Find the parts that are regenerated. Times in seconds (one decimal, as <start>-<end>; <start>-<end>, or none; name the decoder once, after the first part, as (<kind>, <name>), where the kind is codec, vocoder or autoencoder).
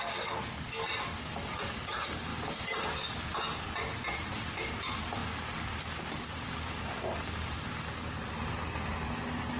none